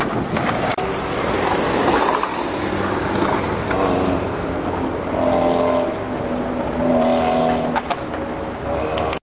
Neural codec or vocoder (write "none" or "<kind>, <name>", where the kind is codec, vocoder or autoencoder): none